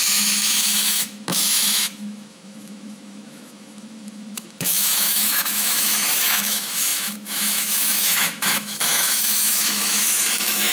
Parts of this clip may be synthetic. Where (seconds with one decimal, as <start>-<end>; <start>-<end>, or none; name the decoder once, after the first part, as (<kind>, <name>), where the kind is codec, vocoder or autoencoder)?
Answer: 0.0-10.7 (autoencoder, DAC-VAE)